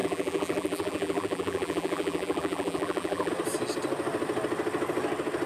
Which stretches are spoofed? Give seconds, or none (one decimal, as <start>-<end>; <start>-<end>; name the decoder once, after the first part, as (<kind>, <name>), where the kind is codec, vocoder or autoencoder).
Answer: 0.0-3.3 (vocoder, BigVGAN v2)